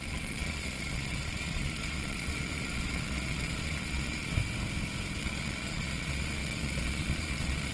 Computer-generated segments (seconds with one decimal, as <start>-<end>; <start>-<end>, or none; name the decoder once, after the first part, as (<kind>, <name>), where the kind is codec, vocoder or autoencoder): 0.0-4.4 (vocoder, Vocos); 5.2-7.7